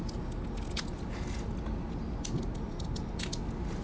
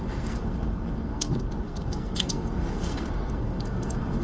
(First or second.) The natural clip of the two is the first